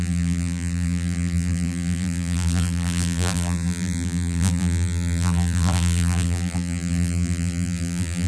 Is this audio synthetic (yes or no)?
yes